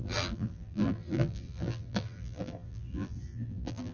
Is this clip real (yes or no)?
no